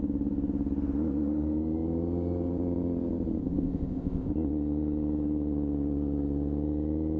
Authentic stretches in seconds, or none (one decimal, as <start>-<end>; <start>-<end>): 0.0-3.4; 4.3-7.2